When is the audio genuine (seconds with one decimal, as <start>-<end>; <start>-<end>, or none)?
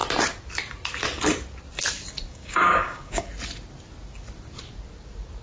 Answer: 0.0-2.3; 3.3-5.4